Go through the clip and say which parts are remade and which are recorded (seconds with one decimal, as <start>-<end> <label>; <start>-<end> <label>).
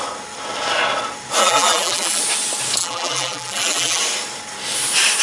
0.0-1.4 recorded; 1.4-2.2 remade; 2.2-2.8 recorded; 2.8-4.0 remade; 4.0-5.2 recorded